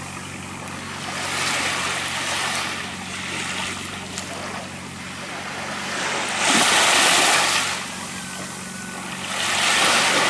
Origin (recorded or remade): recorded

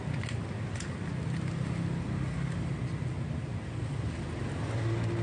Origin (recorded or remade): recorded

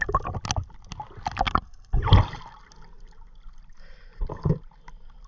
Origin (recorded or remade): recorded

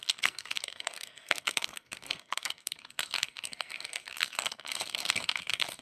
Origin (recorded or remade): remade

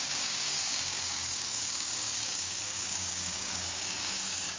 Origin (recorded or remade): remade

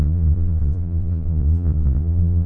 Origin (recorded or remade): remade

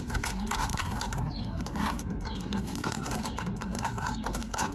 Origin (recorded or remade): remade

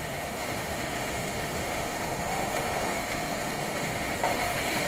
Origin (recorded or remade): remade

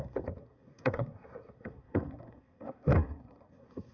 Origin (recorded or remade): remade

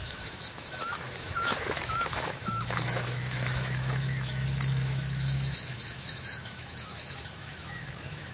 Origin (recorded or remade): remade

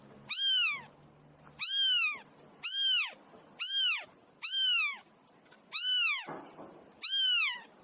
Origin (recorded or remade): recorded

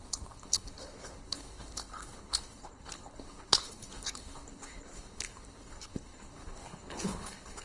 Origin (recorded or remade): remade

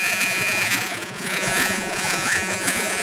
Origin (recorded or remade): remade